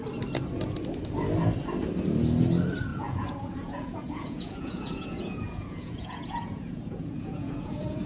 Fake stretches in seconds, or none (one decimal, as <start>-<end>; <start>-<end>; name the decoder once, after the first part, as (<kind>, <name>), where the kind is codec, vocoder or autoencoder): 2.9-8.1 (vocoder, Vocos)